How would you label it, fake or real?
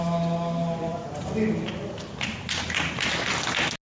real